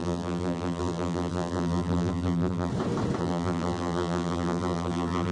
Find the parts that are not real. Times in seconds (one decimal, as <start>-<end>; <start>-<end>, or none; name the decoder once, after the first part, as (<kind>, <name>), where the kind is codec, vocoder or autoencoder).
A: 0.0-2.7 (vocoder, BigVGAN v2); 3.2-5.3